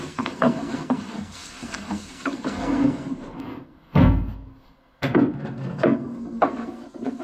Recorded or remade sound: remade